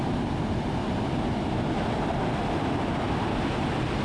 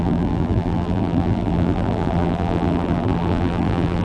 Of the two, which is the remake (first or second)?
second